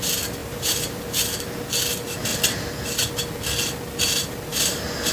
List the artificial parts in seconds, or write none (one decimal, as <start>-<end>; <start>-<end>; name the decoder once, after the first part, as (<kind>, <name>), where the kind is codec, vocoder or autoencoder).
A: 0.4-1.0 (vocoder, BigVGAN v2); 4.5-5.1